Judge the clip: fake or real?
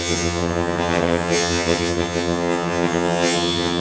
fake